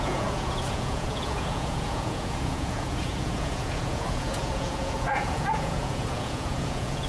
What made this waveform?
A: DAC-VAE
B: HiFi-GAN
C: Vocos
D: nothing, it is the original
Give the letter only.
C